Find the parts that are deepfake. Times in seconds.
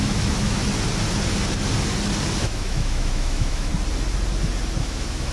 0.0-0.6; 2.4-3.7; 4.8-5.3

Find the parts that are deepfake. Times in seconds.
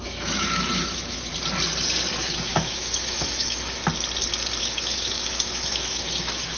0.0-1.3; 2.1-3.8; 4.6-6.6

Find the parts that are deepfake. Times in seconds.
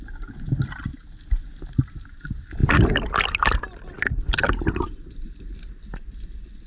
none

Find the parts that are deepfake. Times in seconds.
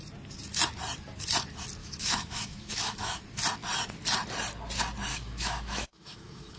1.8-3.2; 5.1-6.6